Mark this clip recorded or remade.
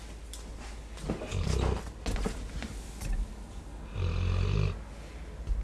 recorded